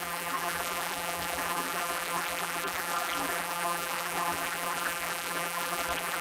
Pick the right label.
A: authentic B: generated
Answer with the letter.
B